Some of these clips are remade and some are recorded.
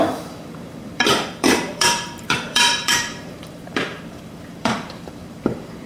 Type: remade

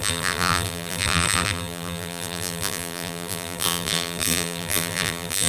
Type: remade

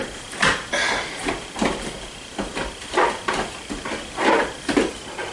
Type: remade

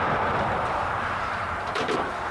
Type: remade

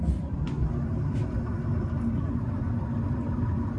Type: recorded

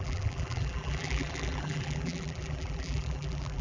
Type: remade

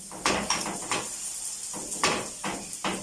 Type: recorded